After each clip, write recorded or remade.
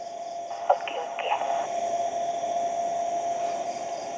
recorded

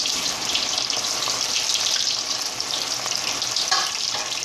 remade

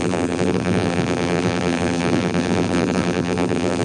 remade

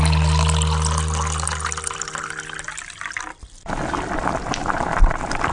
recorded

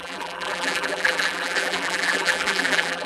remade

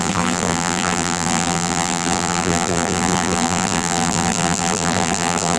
remade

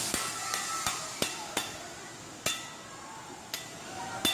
recorded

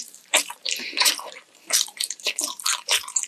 remade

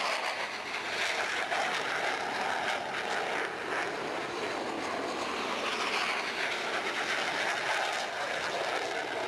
recorded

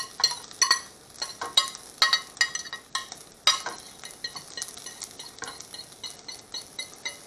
recorded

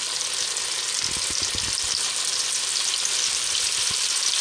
recorded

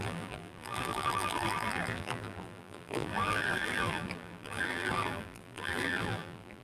remade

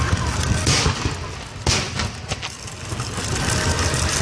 recorded